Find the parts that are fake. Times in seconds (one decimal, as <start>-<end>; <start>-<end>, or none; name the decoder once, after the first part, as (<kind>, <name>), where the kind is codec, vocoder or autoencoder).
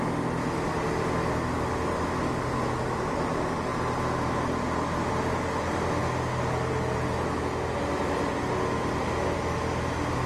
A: none